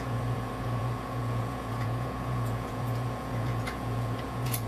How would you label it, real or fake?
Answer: fake